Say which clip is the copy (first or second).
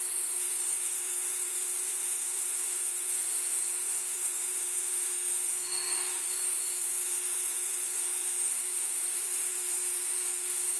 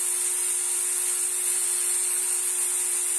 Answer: first